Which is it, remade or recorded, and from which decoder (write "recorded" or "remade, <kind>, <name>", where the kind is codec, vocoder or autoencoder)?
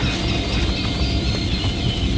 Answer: recorded